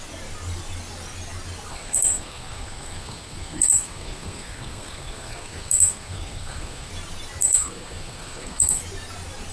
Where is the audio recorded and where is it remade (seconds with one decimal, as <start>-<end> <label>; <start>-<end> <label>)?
0.0-1.7 recorded; 1.7-6.9 remade; 6.9-7.4 recorded; 7.4-8.8 remade; 8.8-9.5 recorded